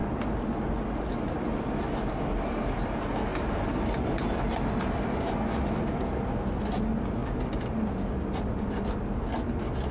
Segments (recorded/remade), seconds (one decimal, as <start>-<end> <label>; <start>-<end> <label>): 0.0-9.9 recorded